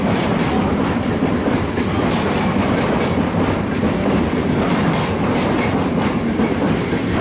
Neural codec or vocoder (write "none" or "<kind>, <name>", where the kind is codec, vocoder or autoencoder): none